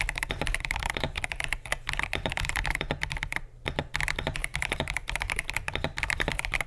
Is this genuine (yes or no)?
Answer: no